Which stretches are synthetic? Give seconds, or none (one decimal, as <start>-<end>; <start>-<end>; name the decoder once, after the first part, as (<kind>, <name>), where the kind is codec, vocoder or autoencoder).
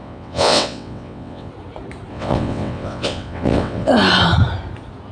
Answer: 0.0-1.5 (vocoder, WaveNeXt); 2.1-3.9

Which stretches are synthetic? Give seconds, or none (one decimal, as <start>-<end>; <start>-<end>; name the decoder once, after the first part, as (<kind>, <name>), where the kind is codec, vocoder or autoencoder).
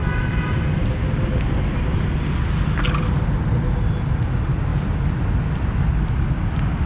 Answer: none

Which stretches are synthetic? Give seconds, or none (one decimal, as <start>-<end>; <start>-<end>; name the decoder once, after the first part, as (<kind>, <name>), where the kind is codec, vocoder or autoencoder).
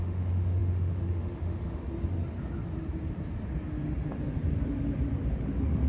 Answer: 0.0-1.8 (autoencoder, DAC-VAE); 5.3-5.9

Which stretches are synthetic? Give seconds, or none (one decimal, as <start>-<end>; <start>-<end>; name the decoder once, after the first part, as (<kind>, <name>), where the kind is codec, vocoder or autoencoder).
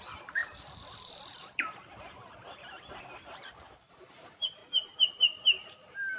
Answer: 0.0-4.6 (vocoder, BigVGAN v2); 5.2-6.2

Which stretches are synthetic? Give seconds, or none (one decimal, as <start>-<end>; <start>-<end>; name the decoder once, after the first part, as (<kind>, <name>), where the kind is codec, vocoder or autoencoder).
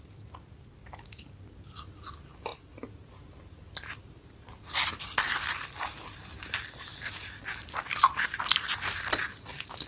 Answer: 2.5-3.2 (vocoder, BigVGAN v2)